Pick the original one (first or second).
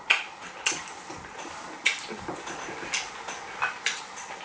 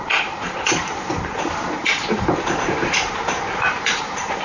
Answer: first